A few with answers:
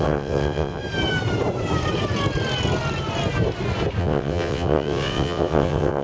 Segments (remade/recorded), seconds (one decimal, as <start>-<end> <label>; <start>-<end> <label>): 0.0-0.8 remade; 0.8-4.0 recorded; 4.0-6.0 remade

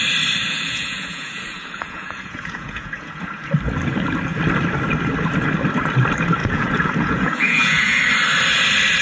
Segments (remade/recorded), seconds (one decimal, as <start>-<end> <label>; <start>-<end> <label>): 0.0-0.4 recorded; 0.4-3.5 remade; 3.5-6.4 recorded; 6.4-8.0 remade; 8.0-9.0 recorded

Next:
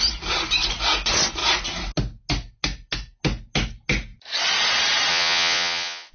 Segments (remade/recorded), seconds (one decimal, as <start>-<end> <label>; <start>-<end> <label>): 0.0-5.1 recorded; 5.1-6.1 remade

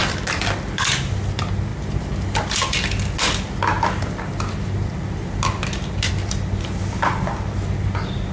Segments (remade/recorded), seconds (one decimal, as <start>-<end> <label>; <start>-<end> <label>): 0.0-8.3 recorded

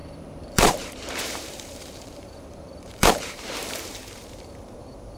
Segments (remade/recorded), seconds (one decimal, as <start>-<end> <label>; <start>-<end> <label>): 0.0-5.2 remade

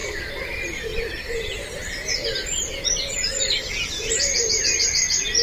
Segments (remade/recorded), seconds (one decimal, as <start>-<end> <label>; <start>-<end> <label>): 0.0-1.7 remade; 1.7-5.4 recorded

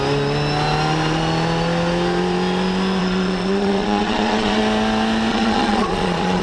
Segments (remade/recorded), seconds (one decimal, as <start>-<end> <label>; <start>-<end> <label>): 0.0-3.0 recorded; 3.0-4.6 remade; 4.6-5.3 recorded; 5.3-6.4 remade

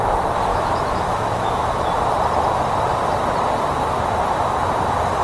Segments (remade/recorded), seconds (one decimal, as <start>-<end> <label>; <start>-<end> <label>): 0.0-0.5 recorded; 0.5-1.9 remade; 1.9-5.2 recorded